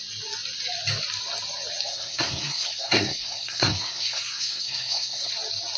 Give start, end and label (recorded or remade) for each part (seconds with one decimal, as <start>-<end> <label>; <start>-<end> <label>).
0.0-1.9 recorded; 1.9-5.3 remade; 5.3-5.8 recorded